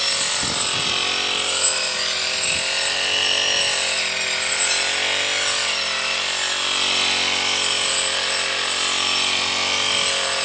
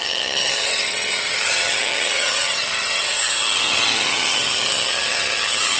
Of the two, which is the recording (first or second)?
first